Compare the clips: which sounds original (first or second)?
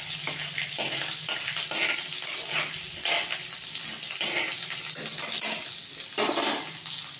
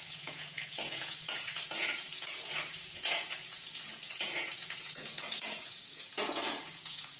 first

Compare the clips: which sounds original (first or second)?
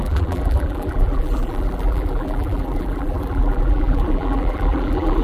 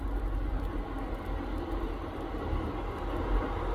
second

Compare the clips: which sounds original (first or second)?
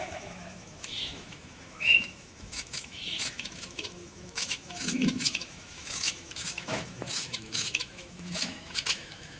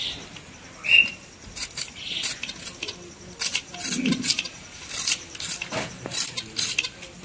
second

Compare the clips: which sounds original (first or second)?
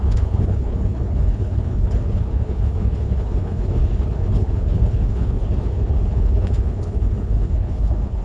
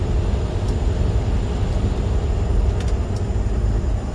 second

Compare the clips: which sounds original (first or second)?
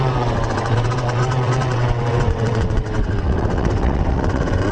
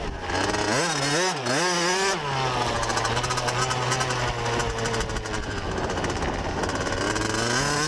second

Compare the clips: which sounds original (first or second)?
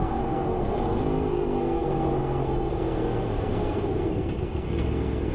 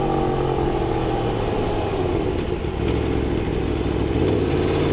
second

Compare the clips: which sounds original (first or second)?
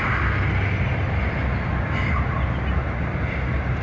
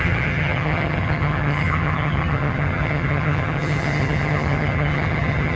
first